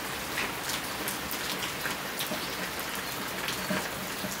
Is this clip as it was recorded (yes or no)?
yes